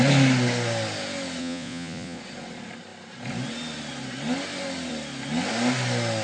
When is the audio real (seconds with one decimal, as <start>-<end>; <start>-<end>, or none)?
0.0-1.4; 2.2-6.2